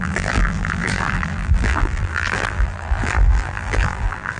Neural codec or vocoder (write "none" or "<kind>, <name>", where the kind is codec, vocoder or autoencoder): vocoder, BigVGAN v2